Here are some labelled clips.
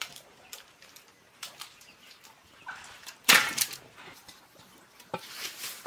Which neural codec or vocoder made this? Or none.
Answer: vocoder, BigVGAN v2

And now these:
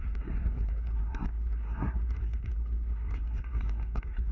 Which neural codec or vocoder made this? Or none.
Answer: codec, SNAC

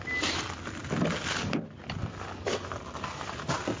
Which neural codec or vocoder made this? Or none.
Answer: none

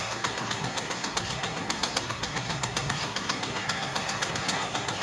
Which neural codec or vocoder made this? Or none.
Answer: codec, SNAC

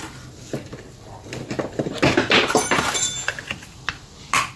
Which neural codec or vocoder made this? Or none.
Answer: none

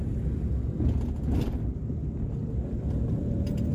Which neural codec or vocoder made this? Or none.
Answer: none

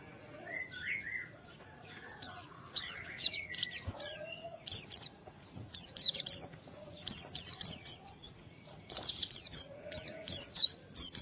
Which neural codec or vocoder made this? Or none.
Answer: vocoder, Vocos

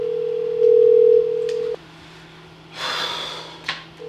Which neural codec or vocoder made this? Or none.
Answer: none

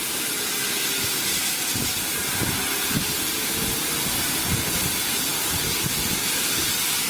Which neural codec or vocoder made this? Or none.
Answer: none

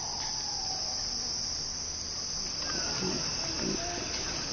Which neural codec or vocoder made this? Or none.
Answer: none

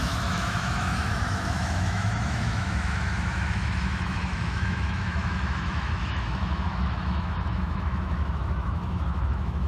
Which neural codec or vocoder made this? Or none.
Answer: autoencoder, DAC-VAE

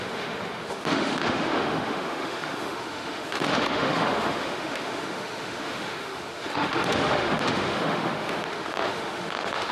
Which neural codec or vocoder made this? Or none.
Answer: autoencoder, DAC-VAE